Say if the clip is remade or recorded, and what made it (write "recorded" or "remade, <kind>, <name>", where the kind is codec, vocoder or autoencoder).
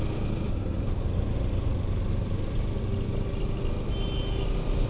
recorded